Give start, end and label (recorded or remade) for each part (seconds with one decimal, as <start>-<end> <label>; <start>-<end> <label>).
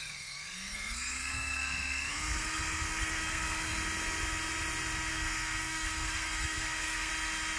0.0-3.7 remade; 3.7-5.1 recorded; 5.1-7.1 remade; 7.1-7.6 recorded